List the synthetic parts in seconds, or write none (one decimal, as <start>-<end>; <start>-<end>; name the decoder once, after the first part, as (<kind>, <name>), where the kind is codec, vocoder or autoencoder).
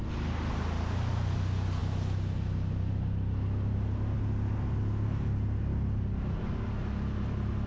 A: none